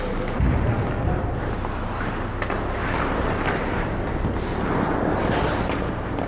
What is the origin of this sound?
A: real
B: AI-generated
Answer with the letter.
A